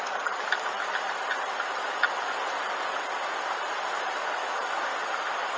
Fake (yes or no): yes